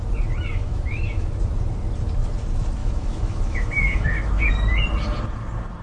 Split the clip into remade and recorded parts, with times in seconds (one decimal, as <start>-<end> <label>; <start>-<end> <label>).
0.0-0.5 recorded; 0.5-1.3 remade; 1.3-2.8 recorded; 2.8-4.5 remade; 4.5-5.8 recorded